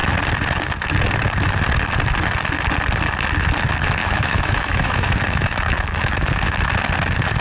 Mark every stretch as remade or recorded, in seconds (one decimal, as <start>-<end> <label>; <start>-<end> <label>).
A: 0.0-4.0 recorded; 4.0-6.6 remade; 6.6-7.4 recorded